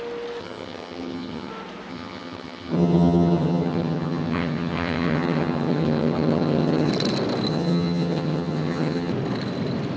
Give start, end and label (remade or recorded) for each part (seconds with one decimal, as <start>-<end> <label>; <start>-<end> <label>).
0.0-0.4 recorded; 0.4-1.5 remade; 1.5-1.9 recorded; 1.9-6.9 remade; 6.9-7.5 recorded; 7.5-9.1 remade; 9.1-10.0 recorded